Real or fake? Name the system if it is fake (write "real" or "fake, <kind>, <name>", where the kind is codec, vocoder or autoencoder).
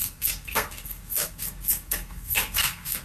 fake, codec, SNAC